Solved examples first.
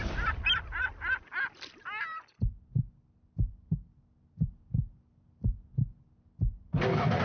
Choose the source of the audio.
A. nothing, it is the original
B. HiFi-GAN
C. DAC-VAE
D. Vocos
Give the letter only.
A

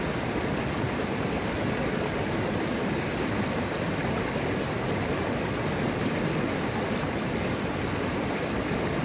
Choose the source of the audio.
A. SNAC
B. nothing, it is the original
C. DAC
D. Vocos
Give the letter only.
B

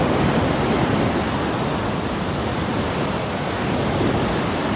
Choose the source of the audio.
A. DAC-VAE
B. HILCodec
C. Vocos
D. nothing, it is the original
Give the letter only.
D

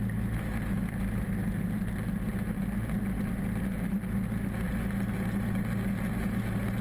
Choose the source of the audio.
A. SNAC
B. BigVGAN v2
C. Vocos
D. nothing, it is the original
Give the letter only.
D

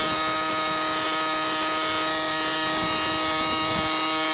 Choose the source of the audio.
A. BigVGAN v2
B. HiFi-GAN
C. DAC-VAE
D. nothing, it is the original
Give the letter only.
D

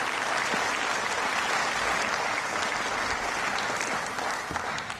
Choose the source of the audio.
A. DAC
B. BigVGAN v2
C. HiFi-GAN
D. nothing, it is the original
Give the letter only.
D